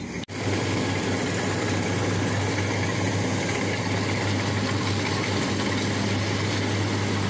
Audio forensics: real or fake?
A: real